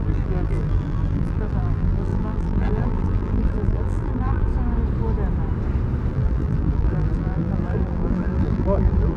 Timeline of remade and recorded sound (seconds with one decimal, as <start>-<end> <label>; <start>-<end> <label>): 0.0-4.5 remade; 4.5-6.1 recorded; 6.1-9.2 remade